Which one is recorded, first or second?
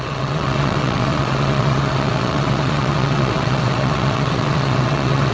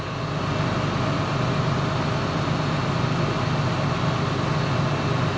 second